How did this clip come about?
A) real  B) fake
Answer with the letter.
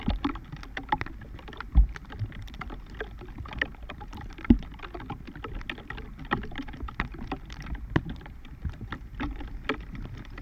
A